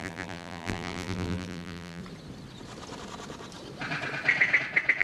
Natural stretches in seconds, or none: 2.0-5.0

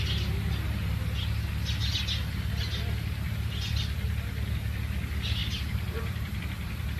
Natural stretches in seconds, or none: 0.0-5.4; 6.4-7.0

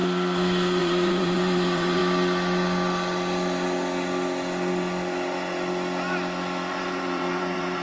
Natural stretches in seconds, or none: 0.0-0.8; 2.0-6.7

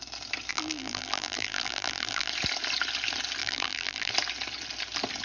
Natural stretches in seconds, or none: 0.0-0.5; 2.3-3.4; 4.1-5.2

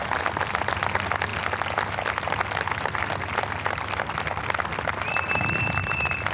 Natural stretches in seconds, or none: 1.3-5.1